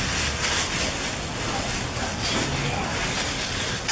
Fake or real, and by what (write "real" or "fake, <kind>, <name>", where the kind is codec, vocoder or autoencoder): real